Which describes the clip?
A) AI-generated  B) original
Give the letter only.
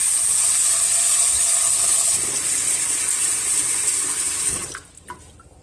B